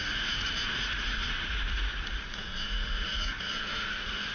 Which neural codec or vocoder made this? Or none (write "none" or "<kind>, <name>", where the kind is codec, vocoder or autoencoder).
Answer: vocoder, Vocos